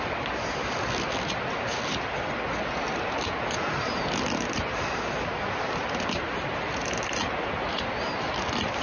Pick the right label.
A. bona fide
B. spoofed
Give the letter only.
A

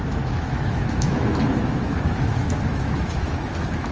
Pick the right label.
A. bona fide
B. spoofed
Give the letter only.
B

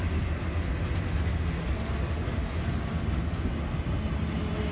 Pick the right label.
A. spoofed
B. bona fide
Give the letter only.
B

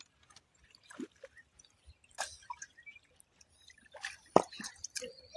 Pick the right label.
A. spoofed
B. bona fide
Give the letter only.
B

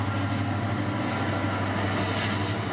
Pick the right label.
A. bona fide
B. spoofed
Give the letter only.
A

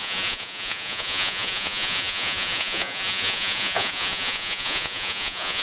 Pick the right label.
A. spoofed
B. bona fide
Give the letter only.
A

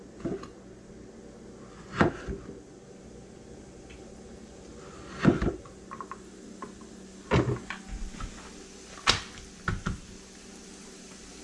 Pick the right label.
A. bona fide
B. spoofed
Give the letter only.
A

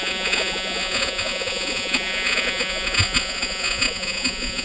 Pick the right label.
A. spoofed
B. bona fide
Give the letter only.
A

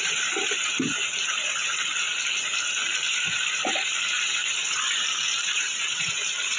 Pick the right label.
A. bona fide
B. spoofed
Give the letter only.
B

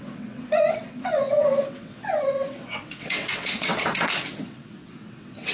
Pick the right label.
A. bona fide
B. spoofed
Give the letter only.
B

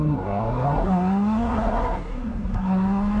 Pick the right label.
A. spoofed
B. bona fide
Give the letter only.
A